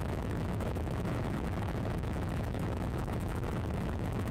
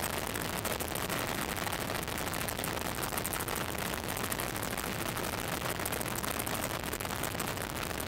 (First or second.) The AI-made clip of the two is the first